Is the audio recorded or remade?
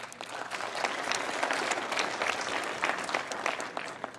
recorded